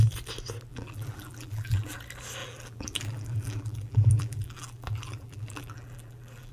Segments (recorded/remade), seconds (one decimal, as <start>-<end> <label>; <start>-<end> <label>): 0.0-0.7 recorded; 0.7-2.0 remade; 2.0-2.4 recorded; 2.4-6.5 remade